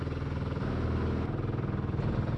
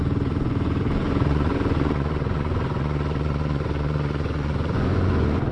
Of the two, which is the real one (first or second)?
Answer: first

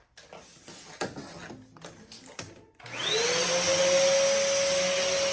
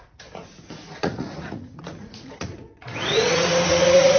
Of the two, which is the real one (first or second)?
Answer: first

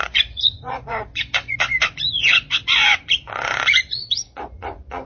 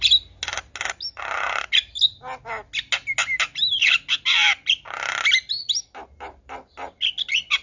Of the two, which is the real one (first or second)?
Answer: second